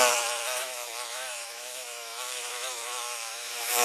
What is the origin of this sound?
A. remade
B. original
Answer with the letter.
A